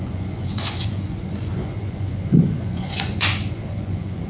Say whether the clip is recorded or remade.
remade